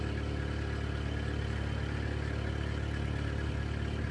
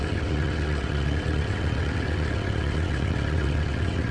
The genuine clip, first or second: first